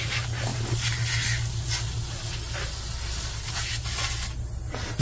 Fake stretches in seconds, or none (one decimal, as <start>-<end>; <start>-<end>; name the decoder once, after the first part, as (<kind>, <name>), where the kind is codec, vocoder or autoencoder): none